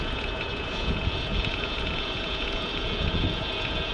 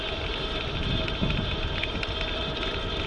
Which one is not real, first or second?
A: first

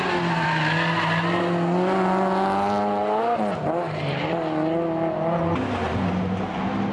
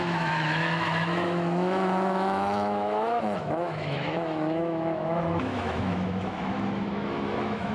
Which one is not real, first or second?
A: second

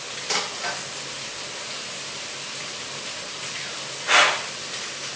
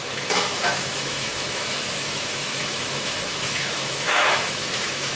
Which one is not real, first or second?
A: second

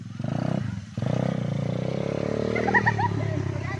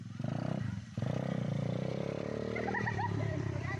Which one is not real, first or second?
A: second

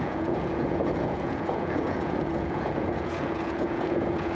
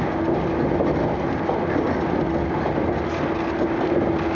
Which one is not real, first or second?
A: first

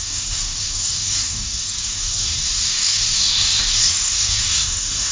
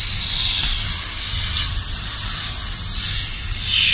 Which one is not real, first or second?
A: first